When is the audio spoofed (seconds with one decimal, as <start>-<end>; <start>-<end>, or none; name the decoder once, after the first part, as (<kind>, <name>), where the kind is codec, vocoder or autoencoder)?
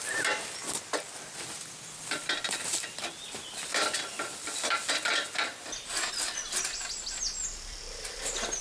none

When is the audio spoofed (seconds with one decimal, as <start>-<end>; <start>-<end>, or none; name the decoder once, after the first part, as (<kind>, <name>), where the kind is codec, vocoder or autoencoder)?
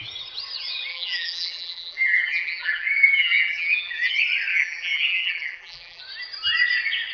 0.9-4.1 (vocoder, BigVGAN v2); 4.5-6.0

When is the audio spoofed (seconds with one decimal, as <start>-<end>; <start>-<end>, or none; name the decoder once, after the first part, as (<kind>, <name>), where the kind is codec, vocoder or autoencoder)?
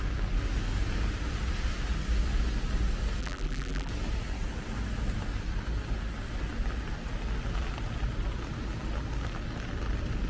3.2-3.9 (vocoder, BigVGAN v2)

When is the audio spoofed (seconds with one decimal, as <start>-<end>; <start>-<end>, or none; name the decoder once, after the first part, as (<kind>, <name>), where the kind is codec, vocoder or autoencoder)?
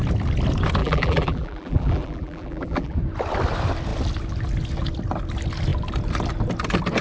0.8-3.0 (vocoder, BigVGAN v2)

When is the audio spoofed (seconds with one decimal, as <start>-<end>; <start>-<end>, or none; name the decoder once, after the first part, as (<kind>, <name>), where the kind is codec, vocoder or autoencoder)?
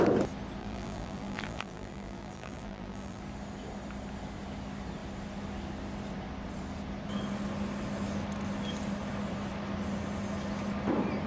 0.6-3.2 (vocoder, BigVGAN v2)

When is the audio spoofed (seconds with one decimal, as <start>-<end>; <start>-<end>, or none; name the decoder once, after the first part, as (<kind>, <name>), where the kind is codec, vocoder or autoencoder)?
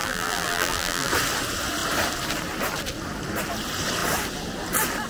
0.0-1.1 (vocoder, BigVGAN v2)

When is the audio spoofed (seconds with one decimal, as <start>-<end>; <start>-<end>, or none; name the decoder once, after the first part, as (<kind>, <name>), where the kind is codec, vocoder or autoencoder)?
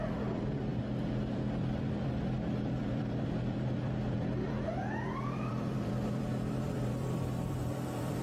0.0-0.7 (vocoder, BigVGAN v2); 1.3-8.2